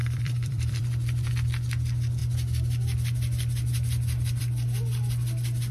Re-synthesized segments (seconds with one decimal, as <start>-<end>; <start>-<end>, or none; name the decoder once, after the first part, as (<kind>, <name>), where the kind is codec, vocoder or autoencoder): 0.0-1.3 (vocoder, BigVGAN v2)